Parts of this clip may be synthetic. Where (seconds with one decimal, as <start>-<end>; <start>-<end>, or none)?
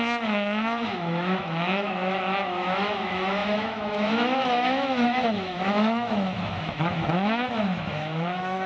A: 0.0-8.7